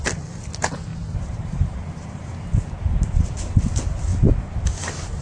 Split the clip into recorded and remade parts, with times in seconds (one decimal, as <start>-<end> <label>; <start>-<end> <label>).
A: 0.0-0.9 recorded; 0.9-2.3 remade; 2.3-5.2 recorded